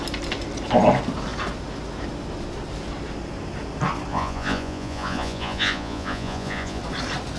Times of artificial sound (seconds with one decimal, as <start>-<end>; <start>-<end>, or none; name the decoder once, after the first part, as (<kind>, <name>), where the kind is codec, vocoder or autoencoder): 4.1-6.8 (vocoder, Vocos)